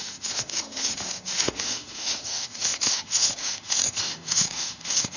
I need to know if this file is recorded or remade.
remade